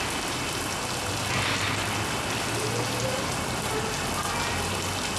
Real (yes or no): yes